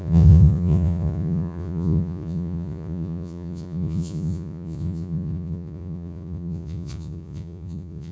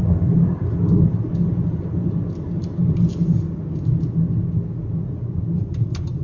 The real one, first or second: second